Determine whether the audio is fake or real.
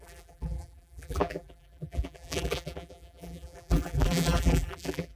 fake